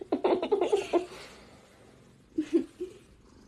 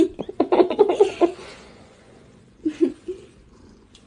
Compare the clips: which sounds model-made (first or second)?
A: second